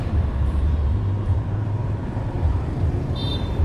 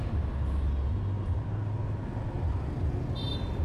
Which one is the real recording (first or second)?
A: second